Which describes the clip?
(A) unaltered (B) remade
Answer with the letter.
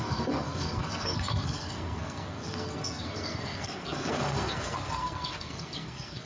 B